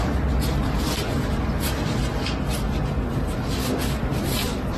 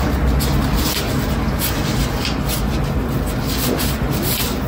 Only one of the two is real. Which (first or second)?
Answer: second